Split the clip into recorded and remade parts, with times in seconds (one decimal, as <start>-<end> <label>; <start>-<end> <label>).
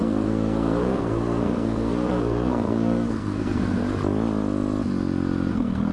0.0-3.8 remade; 3.8-5.5 recorded; 5.5-5.9 remade